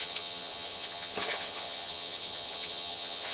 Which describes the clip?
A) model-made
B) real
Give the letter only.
A